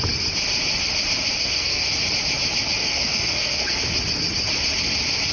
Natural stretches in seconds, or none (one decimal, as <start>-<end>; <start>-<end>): 0.0-1.4; 1.9-2.8; 3.8-5.3